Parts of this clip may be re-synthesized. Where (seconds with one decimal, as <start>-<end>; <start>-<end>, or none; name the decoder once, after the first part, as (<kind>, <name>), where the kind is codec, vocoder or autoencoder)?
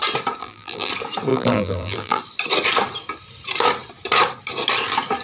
0.4-0.9 (vocoder, BigVGAN v2); 1.3-2.2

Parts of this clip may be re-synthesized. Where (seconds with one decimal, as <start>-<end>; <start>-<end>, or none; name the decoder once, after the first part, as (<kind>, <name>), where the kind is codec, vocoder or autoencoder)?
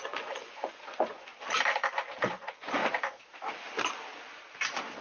0.0-1.3 (vocoder, Vocos); 2.2-2.8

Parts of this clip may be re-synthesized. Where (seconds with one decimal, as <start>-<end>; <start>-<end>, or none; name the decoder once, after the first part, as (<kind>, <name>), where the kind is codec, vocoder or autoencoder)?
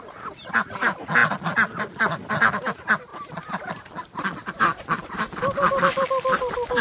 none